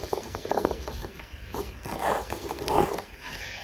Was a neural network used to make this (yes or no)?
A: yes